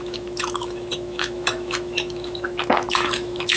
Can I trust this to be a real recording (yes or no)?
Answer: no